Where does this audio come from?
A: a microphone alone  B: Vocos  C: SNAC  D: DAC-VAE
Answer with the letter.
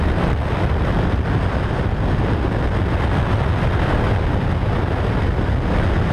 A